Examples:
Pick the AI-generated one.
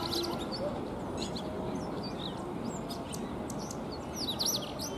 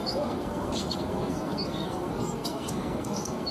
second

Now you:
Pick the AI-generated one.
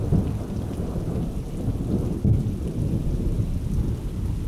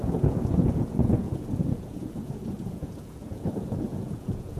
second